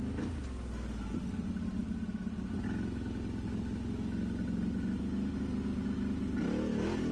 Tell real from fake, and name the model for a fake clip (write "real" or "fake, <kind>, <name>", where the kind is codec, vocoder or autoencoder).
real